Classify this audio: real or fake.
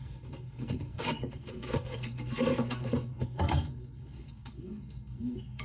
fake